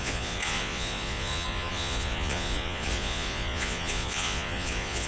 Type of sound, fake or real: fake